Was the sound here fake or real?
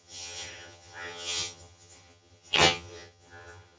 fake